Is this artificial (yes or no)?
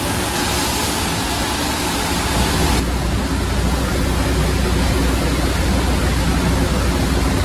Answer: no